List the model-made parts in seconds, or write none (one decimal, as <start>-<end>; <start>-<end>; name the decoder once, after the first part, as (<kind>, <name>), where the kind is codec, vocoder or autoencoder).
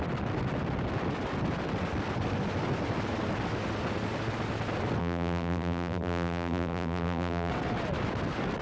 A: 5.0-7.5 (vocoder, BigVGAN v2)